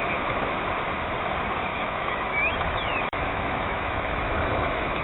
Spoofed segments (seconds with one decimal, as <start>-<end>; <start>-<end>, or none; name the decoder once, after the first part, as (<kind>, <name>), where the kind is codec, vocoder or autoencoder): 1.7-5.0 (autoencoder, DAC-VAE)